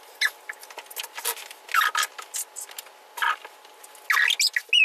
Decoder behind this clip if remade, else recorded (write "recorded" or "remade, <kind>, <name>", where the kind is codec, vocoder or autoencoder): recorded